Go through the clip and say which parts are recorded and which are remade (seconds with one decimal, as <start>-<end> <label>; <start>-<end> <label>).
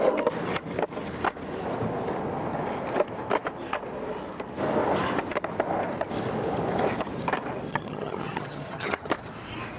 0.0-7.7 recorded; 7.7-9.1 remade; 9.1-9.8 recorded